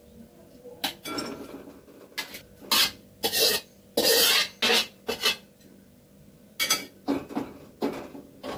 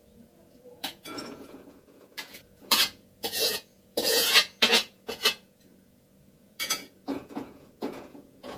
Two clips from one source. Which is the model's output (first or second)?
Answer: second